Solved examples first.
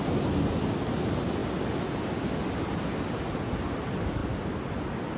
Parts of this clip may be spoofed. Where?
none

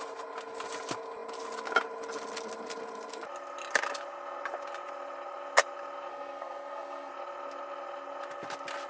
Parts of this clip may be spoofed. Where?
6.1-7.1

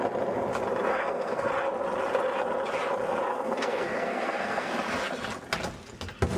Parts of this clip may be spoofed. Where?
0.9-1.5; 3.3-4.7